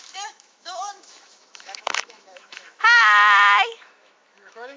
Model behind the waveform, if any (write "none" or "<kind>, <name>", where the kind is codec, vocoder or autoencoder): autoencoder, DAC-VAE